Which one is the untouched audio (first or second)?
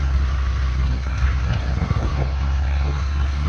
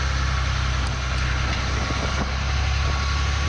second